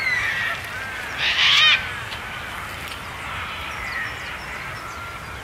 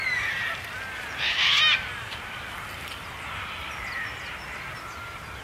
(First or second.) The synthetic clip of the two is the second